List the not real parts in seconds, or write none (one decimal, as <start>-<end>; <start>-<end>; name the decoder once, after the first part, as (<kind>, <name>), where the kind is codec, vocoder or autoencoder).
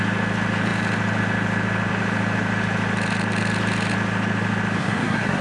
4.8-5.4 (codec, SNAC)